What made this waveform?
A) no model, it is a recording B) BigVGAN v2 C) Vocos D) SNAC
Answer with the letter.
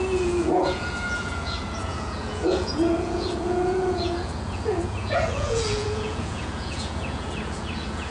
C